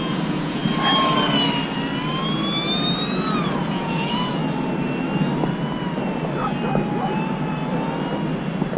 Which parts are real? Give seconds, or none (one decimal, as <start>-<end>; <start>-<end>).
0.6-3.6; 4.4-8.8